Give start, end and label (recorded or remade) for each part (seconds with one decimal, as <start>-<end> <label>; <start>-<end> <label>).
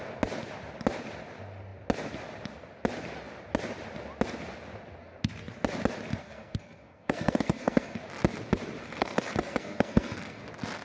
0.0-6.2 recorded; 6.2-8.0 remade; 8.0-8.8 recorded; 8.8-10.4 remade; 10.4-10.8 recorded